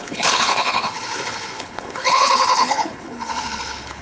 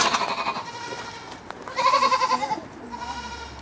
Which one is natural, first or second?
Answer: second